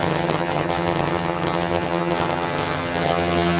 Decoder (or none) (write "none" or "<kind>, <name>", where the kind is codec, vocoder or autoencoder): vocoder, HiFi-GAN